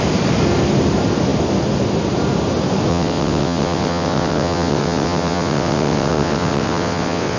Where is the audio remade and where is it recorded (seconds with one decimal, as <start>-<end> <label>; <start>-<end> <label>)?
0.0-2.9 recorded; 2.9-7.4 remade